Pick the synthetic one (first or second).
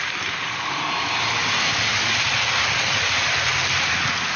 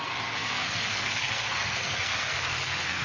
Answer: second